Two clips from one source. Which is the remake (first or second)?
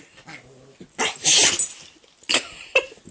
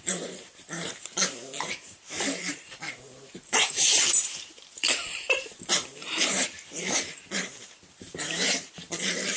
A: second